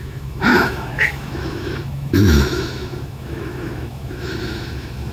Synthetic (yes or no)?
yes